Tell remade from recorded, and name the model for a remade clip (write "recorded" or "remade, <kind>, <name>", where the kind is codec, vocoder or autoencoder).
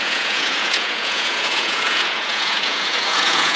remade, vocoder, Vocos